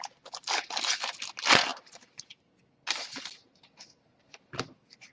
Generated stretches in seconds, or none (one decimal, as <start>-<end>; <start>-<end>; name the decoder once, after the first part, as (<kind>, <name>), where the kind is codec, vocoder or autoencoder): 1.7-2.5 (vocoder, BigVGAN v2)